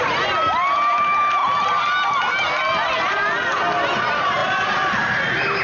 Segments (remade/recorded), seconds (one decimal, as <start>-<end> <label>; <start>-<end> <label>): 0.0-1.4 remade; 1.4-4.0 recorded; 4.0-4.4 remade; 4.4-5.6 recorded